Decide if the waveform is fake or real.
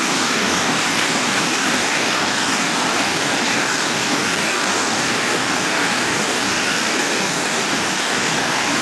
fake